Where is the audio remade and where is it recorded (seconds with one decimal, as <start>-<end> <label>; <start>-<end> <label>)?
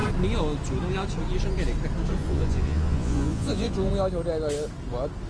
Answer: 0.0-2.2 recorded; 2.2-3.9 remade; 3.9-5.3 recorded